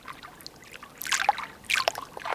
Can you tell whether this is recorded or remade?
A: recorded